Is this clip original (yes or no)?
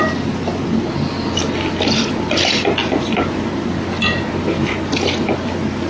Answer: yes